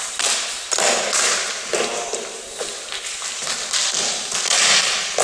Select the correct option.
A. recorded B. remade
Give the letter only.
A